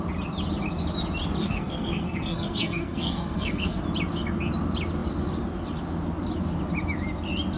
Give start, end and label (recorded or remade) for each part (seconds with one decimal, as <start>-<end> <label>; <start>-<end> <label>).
0.0-1.4 recorded; 1.4-3.8 remade; 3.8-7.6 recorded